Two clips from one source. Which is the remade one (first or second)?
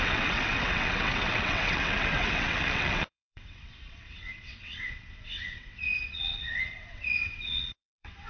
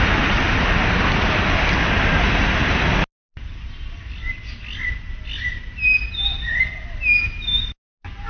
first